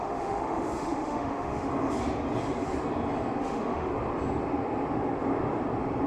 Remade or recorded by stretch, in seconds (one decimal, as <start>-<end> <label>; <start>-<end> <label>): 0.0-1.7 remade; 1.7-3.4 recorded; 3.4-3.9 remade; 3.9-6.1 recorded